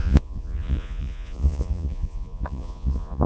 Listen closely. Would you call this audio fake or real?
fake